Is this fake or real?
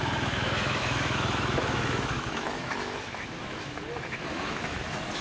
fake